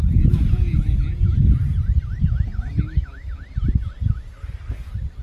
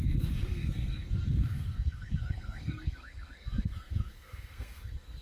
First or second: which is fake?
second